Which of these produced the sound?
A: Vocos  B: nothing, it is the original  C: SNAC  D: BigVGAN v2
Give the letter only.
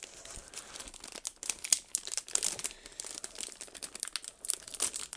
B